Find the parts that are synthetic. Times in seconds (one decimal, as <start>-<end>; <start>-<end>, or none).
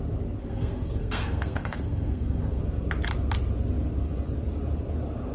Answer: 0.4-2.6